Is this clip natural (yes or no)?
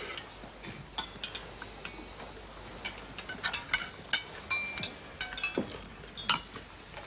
yes